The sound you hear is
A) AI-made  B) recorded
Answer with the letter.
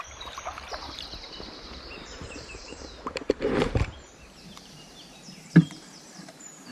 A